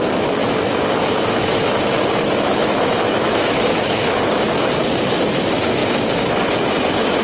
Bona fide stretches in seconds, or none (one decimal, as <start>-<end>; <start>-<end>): 0.0-0.4; 4.7-5.8